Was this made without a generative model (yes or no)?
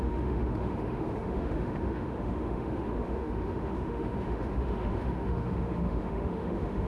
no